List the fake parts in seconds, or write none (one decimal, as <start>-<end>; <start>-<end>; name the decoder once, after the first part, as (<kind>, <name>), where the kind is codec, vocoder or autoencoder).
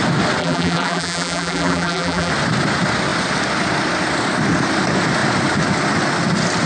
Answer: 0.4-2.3 (vocoder, BigVGAN v2)